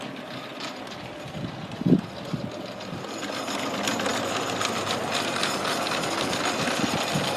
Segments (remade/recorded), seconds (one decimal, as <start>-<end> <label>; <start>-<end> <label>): 0.0-7.4 recorded